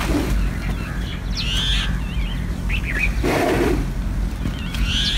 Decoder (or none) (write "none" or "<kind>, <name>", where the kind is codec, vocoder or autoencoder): none